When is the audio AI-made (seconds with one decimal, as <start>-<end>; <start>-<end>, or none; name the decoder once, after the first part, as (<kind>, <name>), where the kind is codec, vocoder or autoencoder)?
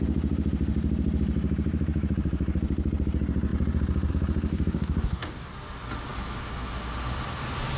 4.5-5.5 (codec, DAC)